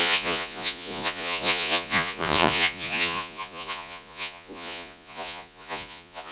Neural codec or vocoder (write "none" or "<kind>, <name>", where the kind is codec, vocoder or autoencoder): vocoder, Vocos